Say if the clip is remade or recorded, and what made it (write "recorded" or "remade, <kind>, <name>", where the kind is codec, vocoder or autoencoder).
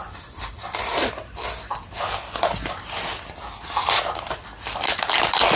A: recorded